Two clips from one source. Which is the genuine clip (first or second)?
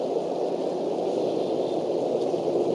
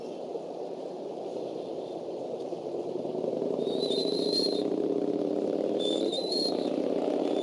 first